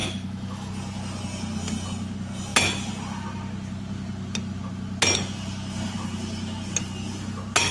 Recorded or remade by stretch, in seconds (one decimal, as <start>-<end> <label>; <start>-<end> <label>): 0.0-0.7 remade; 0.7-7.7 recorded